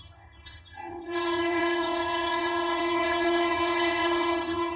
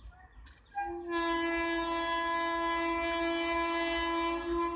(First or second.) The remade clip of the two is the first